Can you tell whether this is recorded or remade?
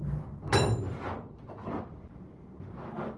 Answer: recorded